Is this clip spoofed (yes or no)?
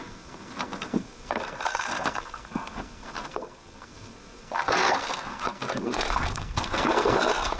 yes